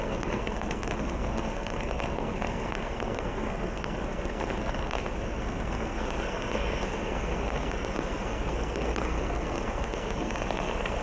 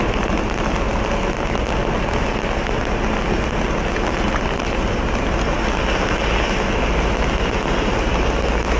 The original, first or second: second